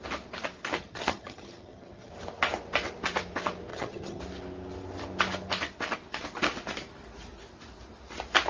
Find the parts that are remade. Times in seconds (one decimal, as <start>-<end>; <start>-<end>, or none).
0.8-2.1; 3.7-4.2